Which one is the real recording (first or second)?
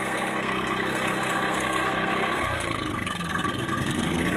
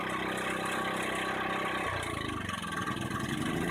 second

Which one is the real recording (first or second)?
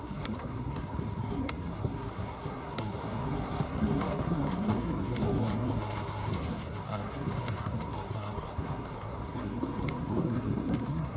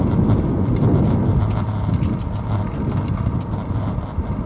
second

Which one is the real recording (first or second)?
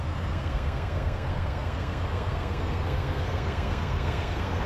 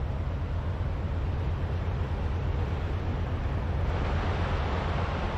second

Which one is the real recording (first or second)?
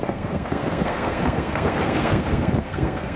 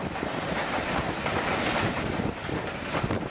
second